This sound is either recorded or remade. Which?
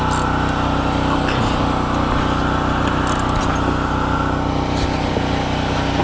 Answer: recorded